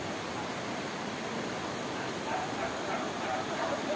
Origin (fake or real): real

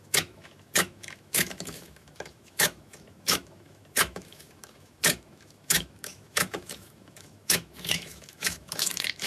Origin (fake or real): fake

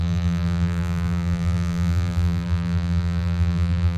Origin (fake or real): fake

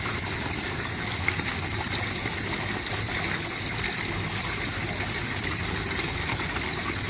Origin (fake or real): real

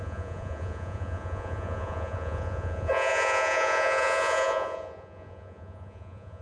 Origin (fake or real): fake